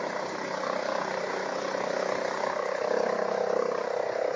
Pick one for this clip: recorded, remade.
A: recorded